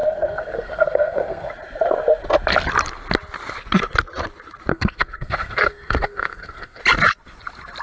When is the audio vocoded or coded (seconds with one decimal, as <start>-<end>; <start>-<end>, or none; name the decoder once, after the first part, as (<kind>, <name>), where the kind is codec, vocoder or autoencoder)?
0.0-1.5 (codec, SNAC); 4.7-6.8